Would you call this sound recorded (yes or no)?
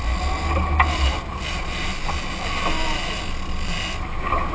yes